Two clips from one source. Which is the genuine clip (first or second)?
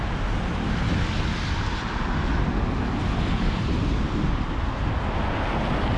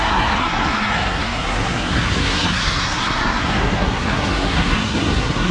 first